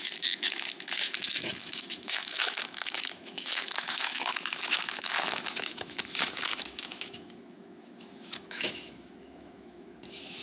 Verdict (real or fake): fake